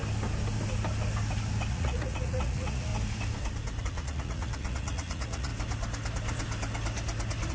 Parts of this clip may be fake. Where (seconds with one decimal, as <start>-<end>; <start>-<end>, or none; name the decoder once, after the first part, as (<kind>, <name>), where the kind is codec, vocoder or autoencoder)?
1.7-2.9 (vocoder, Vocos); 3.8-5.5